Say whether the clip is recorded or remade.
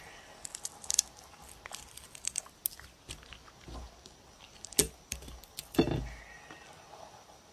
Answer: recorded